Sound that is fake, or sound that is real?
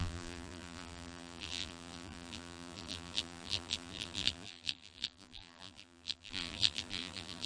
fake